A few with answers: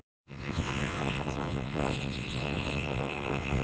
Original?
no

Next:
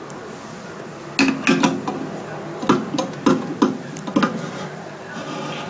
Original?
yes